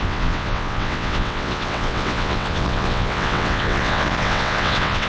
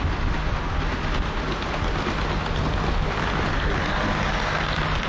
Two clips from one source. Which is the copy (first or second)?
first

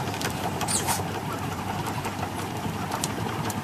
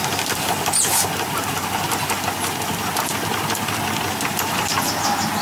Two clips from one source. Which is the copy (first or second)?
first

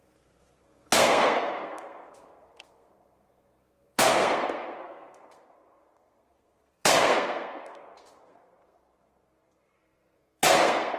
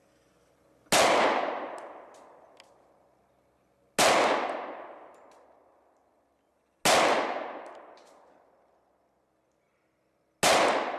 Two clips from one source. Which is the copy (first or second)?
first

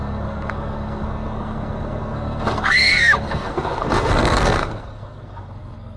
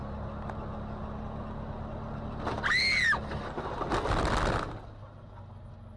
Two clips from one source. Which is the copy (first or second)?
first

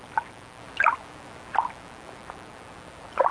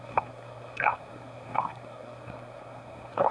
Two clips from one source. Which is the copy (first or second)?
second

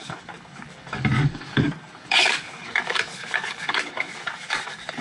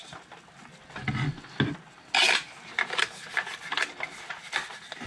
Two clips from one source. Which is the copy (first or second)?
first